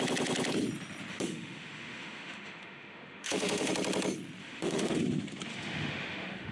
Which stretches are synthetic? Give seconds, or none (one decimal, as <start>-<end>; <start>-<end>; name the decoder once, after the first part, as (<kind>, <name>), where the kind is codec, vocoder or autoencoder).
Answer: 1.1-3.7 (autoencoder, DAC-VAE); 4.4-5.0; 5.5-6.5